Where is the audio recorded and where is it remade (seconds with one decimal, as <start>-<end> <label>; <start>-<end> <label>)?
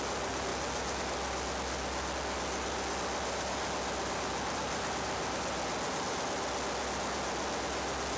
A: 0.0-8.2 recorded